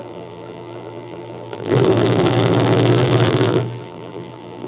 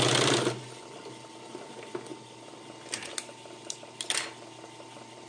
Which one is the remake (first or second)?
first